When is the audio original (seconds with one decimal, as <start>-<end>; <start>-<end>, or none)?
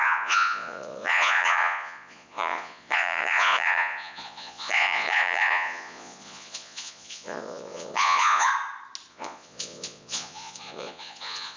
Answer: 8.5-9.1